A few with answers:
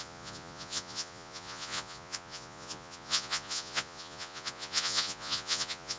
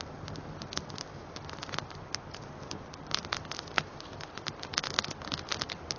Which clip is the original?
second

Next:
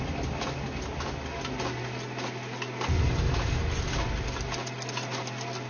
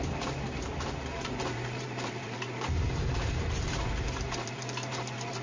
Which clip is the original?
first